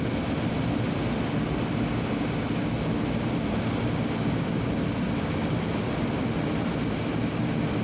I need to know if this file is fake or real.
real